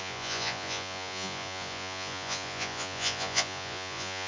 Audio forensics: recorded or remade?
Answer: remade